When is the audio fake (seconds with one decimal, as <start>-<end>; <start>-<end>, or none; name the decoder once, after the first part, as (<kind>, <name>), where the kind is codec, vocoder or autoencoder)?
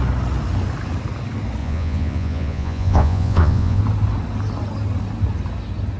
1.6-3.8 (vocoder, Vocos)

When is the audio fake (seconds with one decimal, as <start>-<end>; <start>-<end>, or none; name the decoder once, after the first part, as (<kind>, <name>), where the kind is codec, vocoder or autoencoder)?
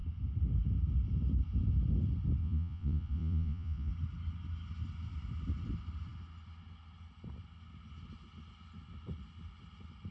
2.4-3.9 (vocoder, Vocos)